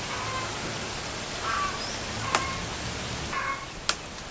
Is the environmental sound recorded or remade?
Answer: recorded